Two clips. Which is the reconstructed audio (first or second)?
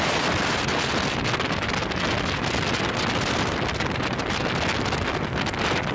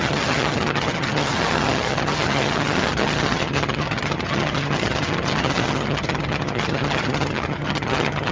second